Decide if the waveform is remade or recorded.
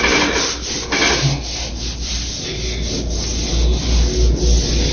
recorded